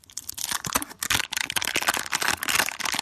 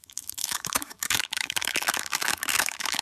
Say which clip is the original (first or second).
first